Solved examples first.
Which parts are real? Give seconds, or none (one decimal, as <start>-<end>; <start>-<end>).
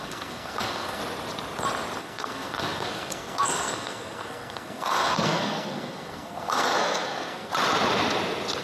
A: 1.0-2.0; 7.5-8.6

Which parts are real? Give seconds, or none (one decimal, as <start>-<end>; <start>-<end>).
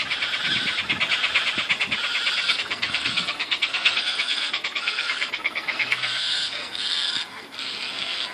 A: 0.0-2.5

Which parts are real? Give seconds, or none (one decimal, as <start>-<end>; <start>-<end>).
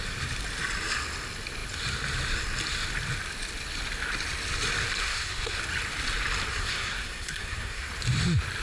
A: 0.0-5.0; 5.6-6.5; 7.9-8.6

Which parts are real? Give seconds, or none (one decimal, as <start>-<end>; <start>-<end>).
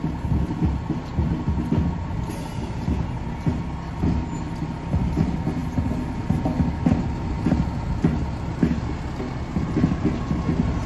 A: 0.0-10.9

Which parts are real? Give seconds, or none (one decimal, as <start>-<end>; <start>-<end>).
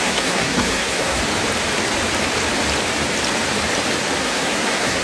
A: 1.2-4.2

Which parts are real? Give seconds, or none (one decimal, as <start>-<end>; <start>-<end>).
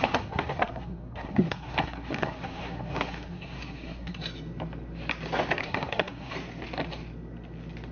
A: 4.2-5.6; 6.3-7.9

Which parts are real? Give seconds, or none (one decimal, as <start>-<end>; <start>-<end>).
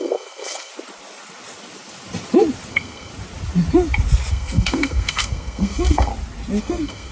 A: 0.7-2.7; 3.1-4.3; 6.1-6.6